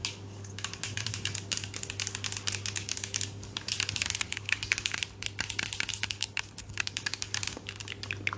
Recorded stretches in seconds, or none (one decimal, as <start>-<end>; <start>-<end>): 5.0-5.9; 7.8-8.4